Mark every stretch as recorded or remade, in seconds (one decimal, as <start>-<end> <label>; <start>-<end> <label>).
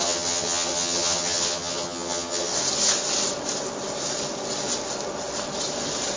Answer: 0.0-2.5 remade; 2.5-6.2 recorded